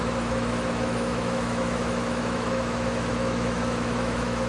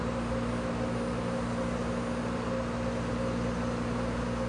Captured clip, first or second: second